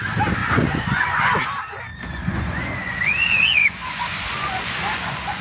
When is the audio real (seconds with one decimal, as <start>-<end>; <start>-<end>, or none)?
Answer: 0.0-0.4; 1.3-1.9